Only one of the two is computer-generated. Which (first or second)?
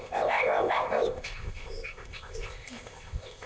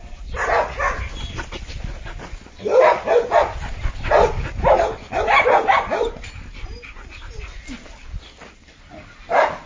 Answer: first